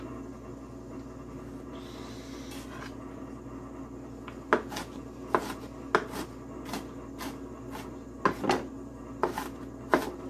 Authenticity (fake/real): real